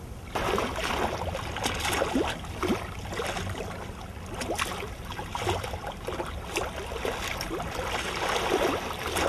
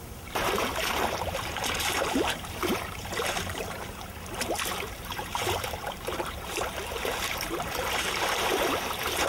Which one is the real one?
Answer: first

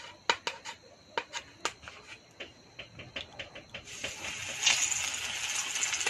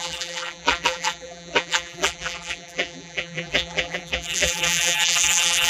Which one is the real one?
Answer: first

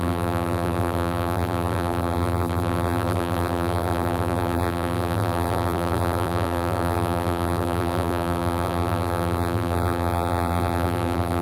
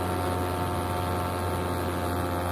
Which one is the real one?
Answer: second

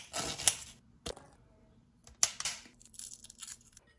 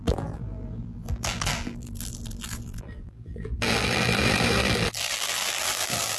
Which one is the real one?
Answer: first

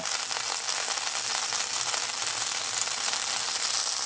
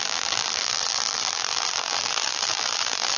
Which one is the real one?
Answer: first